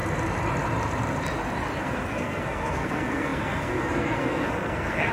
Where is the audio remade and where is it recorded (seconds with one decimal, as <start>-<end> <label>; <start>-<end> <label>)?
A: 0.0-1.8 recorded; 1.8-5.1 remade